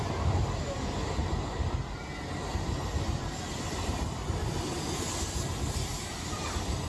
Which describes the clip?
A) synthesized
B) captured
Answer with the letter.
B